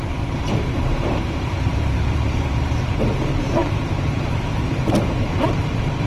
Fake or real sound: fake